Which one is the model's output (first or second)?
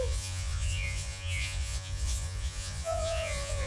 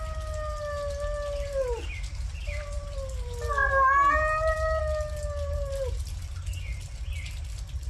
first